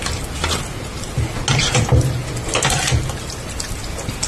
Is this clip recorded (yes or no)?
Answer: yes